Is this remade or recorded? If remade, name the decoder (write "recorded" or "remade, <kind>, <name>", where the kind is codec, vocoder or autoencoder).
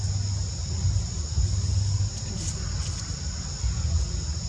recorded